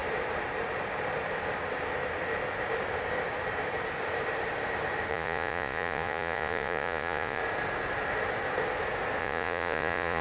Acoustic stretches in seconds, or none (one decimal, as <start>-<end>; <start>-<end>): 0.0-5.1; 7.4-9.2